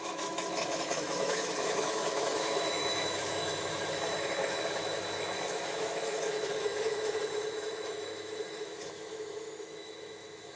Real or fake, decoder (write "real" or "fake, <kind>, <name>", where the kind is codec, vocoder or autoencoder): fake, autoencoder, DAC-VAE